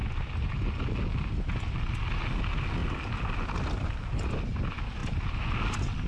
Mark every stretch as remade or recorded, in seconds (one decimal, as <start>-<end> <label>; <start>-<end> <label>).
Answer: 0.0-6.1 recorded